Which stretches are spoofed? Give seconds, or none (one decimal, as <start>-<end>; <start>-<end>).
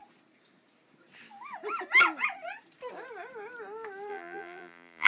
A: 4.1-5.1